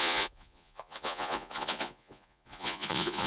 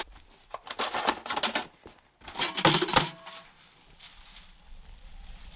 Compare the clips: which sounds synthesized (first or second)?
first